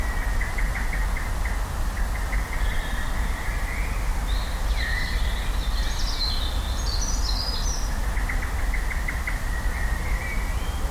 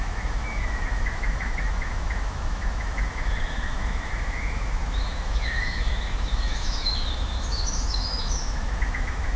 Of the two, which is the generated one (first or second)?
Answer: second